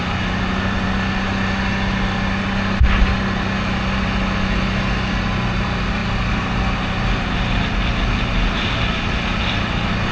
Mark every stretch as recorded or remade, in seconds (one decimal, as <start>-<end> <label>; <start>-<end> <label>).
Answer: 0.0-10.1 recorded